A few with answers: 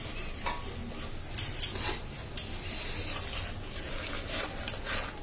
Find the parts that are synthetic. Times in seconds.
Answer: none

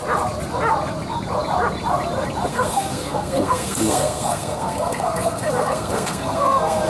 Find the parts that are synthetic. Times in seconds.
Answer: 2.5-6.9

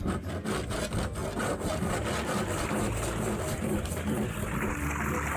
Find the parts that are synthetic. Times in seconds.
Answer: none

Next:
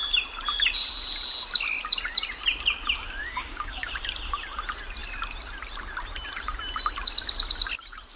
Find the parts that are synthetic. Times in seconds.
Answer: 3.2-3.9

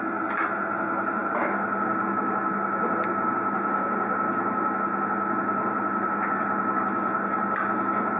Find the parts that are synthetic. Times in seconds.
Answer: none

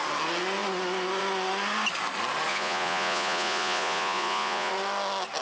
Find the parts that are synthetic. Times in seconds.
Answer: 2.5-4.7

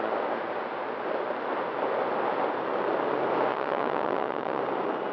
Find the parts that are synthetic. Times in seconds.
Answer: 3.5-4.6